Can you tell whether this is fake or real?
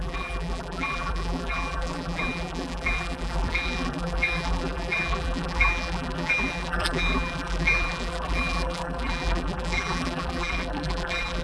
fake